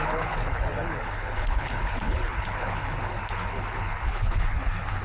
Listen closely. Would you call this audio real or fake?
fake